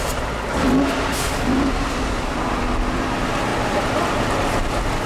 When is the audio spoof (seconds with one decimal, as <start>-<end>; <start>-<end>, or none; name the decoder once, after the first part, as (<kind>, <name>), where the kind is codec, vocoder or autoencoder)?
none